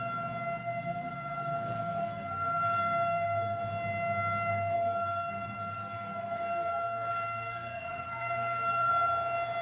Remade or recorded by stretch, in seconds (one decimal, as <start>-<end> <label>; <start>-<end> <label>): 0.0-0.6 recorded; 0.6-3.6 remade; 3.6-4.5 recorded; 4.5-8.9 remade; 8.9-9.6 recorded